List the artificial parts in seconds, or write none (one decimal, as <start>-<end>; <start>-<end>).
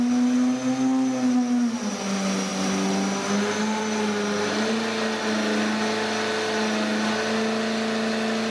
none